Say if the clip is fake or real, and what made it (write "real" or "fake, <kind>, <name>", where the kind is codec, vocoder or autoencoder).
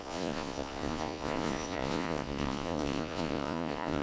fake, vocoder, Vocos